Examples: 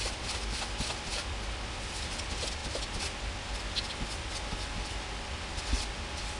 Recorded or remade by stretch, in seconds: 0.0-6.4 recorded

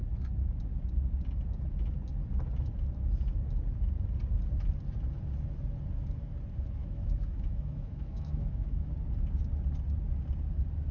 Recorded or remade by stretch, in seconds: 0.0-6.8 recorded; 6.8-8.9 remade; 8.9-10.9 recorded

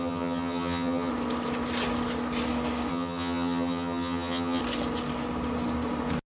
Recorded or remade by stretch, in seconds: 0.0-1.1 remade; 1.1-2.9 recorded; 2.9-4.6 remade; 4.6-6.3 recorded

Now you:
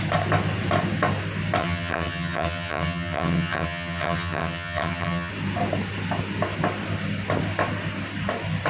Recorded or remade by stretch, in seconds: 0.0-1.6 recorded; 1.6-5.3 remade; 5.3-8.7 recorded

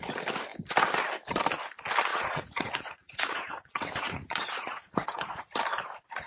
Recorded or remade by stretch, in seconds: 0.0-2.1 recorded; 2.1-5.5 remade; 5.5-6.3 recorded